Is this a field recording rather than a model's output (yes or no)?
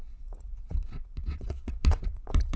no